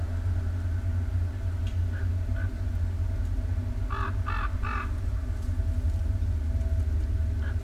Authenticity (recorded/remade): recorded